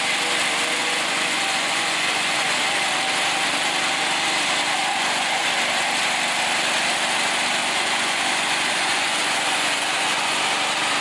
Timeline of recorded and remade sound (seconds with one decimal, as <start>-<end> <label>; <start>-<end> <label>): 0.0-0.8 recorded; 0.8-2.6 remade; 2.6-4.6 recorded; 4.6-5.5 remade; 5.5-7.6 recorded; 7.6-10.4 remade; 10.4-11.0 recorded